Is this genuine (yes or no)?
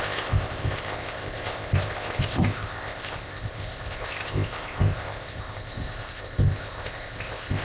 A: no